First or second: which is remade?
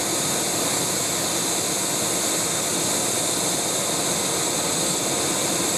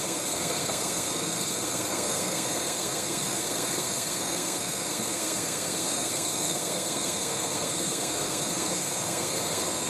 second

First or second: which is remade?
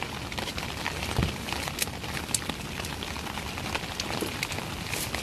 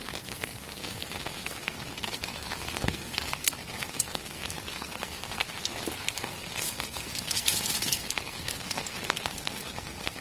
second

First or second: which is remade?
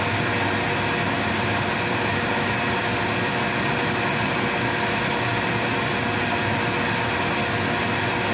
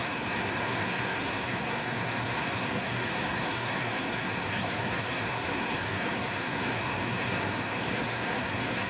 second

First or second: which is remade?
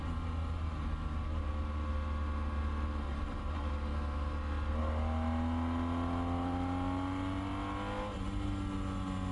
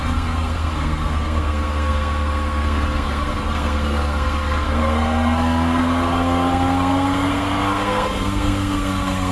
second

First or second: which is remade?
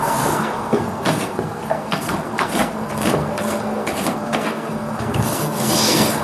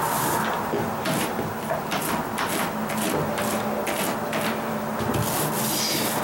first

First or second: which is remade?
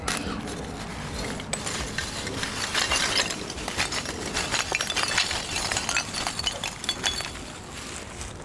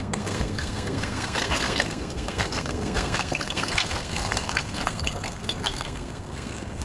second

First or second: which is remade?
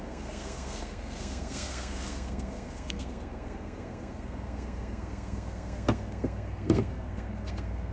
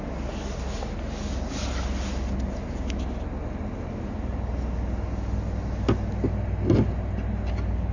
first